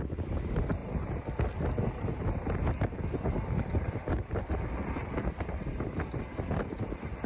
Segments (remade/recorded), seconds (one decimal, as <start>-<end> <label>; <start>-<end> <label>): 0.0-7.3 recorded